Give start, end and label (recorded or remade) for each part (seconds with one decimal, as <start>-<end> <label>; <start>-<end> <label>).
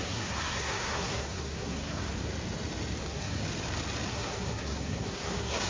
0.0-2.0 remade; 2.0-3.0 recorded; 3.0-3.4 remade; 3.4-4.1 recorded; 4.1-5.7 remade